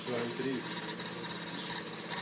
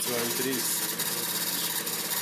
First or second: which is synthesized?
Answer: first